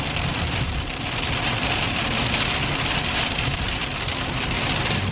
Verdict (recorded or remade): recorded